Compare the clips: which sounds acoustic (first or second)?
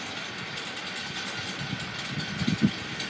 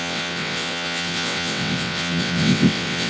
first